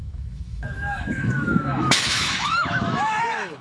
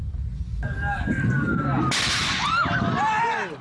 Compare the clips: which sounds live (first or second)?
second